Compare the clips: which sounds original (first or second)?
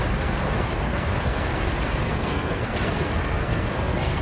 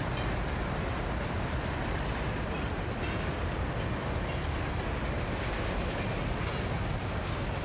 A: second